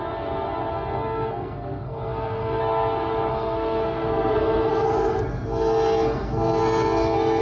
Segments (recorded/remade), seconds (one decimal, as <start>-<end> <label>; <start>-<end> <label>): 0.0-0.7 recorded; 0.7-2.6 remade; 2.6-3.3 recorded; 3.3-7.4 remade